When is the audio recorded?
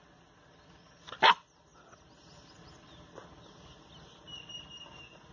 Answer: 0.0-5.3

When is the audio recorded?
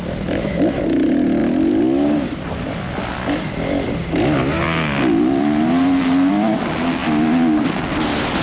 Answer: 0.0-8.4